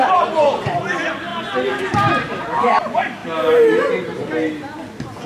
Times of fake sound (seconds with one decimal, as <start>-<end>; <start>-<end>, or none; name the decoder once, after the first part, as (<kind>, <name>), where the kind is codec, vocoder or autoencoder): 0.0-3.2 (vocoder, BigVGAN v2)